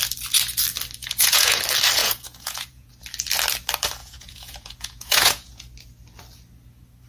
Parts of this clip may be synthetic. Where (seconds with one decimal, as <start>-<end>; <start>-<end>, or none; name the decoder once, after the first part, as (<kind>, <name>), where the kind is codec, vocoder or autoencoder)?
1.0-1.6 (vocoder, Vocos); 2.0-2.9; 4.0-5.7